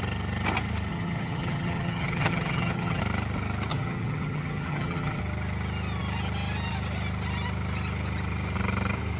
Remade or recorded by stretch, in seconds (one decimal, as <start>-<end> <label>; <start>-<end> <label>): 0.0-0.9 recorded; 0.9-3.0 remade; 3.0-3.7 recorded; 3.7-5.2 remade; 5.2-9.2 recorded